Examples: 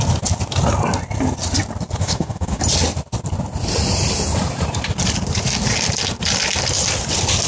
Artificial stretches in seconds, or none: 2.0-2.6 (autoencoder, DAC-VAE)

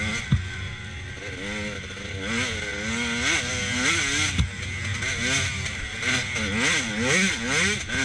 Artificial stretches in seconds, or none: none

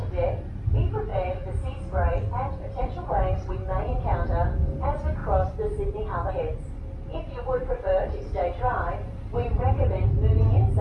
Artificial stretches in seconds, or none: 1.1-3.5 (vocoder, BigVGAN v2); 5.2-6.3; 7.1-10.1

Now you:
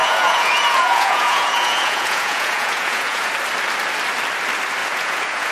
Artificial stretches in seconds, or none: 0.0-3.3 (vocoder, Vocos); 4.8-5.5

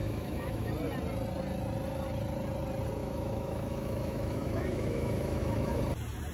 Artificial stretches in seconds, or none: 0.0-0.7 (autoencoder, DAC-VAE); 3.0-5.8

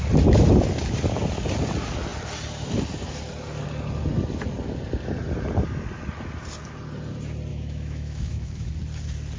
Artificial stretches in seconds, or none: 7.5-8.7 (autoencoder, DAC-VAE)

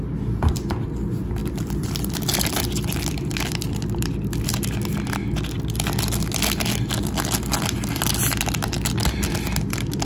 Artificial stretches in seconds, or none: 1.4-4.1 (vocoder, BigVGAN v2); 8.7-9.3